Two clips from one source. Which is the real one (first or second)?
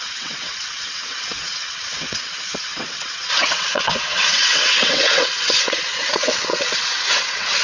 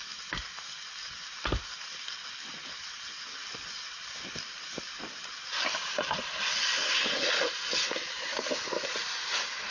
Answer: second